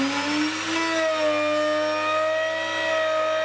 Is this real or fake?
real